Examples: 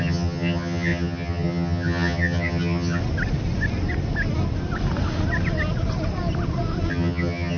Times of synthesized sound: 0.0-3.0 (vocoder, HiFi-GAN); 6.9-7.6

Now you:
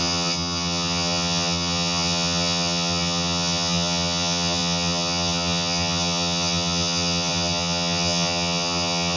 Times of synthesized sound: 0.0-9.2 (vocoder, HiFi-GAN)

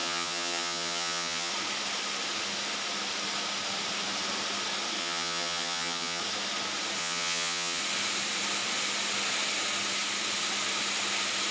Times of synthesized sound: 0.0-1.5 (vocoder, HiFi-GAN); 5.0-6.2; 7.0-7.8

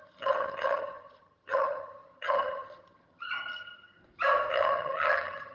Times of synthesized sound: 0.0-4.0 (vocoder, HiFi-GAN); 4.5-5.5